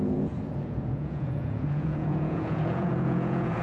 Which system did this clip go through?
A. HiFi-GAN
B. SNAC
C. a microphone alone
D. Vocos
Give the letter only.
D